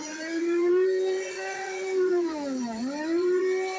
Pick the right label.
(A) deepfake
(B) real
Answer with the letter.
A